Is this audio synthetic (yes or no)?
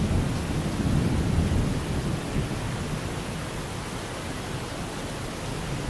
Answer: no